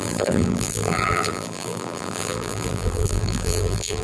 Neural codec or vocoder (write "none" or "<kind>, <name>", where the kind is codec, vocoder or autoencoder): vocoder, BigVGAN v2